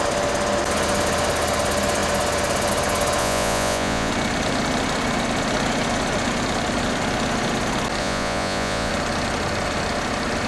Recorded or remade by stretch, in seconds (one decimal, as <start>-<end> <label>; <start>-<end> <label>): 0.0-3.2 recorded; 3.2-4.1 remade; 4.1-8.0 recorded; 8.0-8.9 remade; 8.9-10.5 recorded

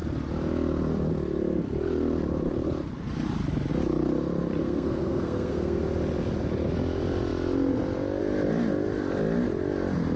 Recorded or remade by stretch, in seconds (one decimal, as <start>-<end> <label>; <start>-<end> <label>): 0.0-4.6 recorded; 4.6-5.8 remade; 5.8-10.2 recorded

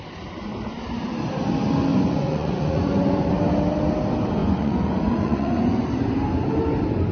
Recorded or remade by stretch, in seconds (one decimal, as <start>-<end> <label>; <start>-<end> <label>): 0.0-1.9 recorded; 1.9-3.3 remade; 3.3-4.4 recorded; 4.4-5.9 remade; 5.9-7.1 recorded

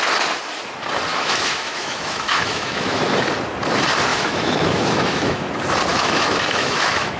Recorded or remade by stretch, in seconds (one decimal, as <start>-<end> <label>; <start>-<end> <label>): 0.0-1.1 recorded; 1.1-3.0 remade; 3.0-4.1 recorded; 4.1-5.5 remade; 5.5-5.9 recorded; 5.9-7.2 remade

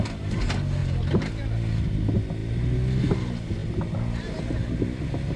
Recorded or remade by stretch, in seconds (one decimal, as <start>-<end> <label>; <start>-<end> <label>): 0.0-0.8 recorded; 0.8-1.3 remade; 1.3-5.4 recorded

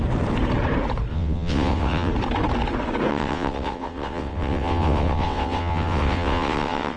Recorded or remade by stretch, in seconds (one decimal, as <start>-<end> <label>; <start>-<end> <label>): 0.0-1.1 recorded; 1.1-2.1 remade; 2.1-3.1 recorded; 3.1-7.0 remade